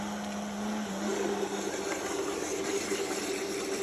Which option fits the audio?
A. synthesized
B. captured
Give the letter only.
B